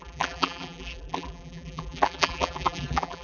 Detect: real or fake fake